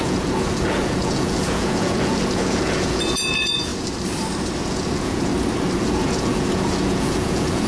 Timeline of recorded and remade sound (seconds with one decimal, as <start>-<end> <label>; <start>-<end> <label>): 0.0-3.7 remade; 3.7-4.6 recorded; 4.6-5.3 remade; 5.3-5.8 recorded; 5.8-7.7 remade